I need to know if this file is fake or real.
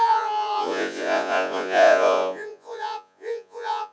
fake